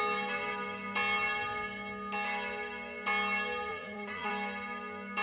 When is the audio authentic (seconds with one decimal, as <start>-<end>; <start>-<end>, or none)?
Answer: 0.0-3.7; 4.3-5.2

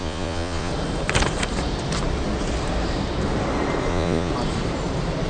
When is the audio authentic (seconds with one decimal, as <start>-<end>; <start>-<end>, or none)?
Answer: 0.7-3.9; 4.3-5.3

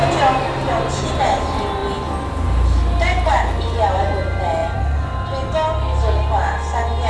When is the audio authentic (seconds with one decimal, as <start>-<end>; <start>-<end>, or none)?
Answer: 0.0-7.1

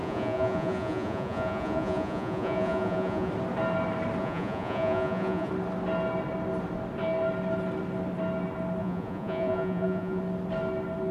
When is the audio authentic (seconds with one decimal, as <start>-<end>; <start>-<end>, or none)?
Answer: 3.3-4.2; 5.5-8.8; 10.2-11.1

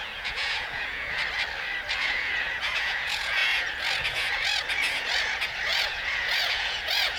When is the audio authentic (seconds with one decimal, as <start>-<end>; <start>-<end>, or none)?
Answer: 1.2-2.0